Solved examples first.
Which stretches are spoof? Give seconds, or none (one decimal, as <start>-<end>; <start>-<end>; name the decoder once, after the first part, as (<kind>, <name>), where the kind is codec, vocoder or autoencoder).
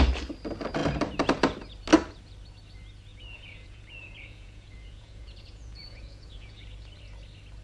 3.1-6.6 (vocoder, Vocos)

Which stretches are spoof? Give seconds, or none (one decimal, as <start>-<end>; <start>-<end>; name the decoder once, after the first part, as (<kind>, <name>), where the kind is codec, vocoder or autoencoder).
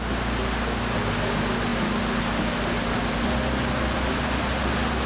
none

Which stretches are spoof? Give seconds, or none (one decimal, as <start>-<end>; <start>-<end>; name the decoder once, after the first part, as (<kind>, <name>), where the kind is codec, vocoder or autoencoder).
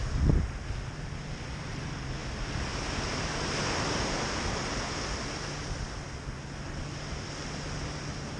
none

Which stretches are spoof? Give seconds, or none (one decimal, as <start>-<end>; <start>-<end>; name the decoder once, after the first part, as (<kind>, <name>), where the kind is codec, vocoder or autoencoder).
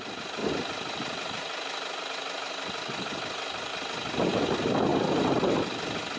none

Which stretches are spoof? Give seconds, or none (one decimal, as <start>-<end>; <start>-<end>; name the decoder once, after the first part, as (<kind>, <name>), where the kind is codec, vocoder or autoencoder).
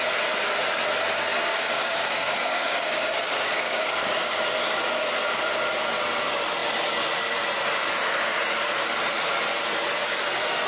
1.5-4.4 (codec, DAC)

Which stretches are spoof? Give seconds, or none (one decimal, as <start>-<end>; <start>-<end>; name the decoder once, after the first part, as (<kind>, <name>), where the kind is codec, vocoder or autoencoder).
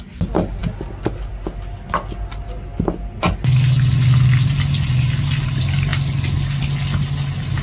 none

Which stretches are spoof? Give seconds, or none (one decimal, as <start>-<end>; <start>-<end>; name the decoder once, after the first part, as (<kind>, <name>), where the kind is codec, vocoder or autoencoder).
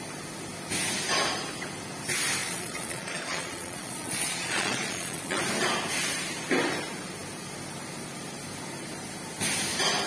2.4-5.4 (vocoder, Vocos)